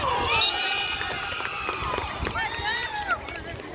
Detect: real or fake real